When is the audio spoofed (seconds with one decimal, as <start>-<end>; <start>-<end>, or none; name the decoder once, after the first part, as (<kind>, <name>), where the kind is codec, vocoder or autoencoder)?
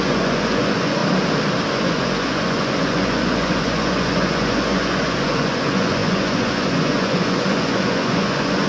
0.0-1.0 (vocoder, Vocos); 1.7-8.7